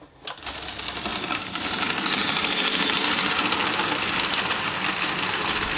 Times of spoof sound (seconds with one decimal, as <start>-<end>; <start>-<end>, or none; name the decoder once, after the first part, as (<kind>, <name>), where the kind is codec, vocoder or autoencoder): 1.1-3.3 (vocoder, BigVGAN v2)